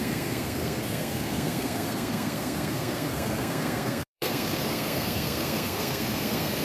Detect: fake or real fake